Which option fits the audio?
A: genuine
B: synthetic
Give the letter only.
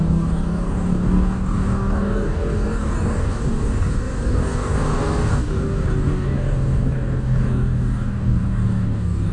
B